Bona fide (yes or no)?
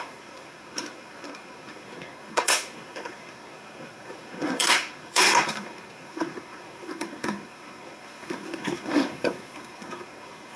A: no